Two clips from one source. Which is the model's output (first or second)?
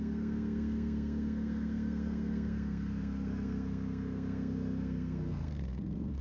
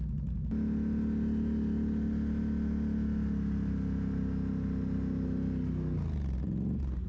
first